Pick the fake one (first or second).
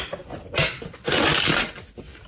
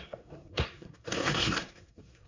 second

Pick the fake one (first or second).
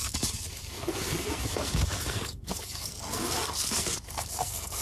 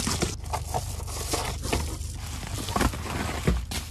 first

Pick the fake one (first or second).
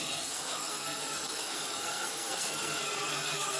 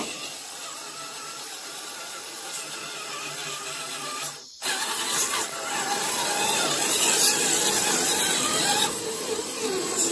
first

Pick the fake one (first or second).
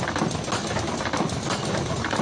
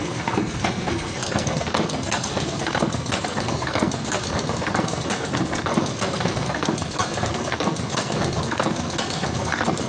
second